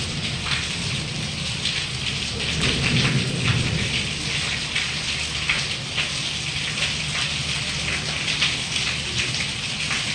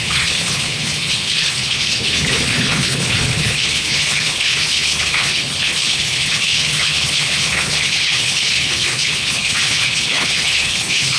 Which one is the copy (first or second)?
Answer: second